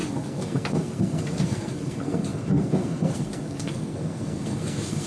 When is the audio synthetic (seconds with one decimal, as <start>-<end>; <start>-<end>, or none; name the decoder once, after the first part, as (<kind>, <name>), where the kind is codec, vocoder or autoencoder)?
0.0-5.1 (codec, SNAC)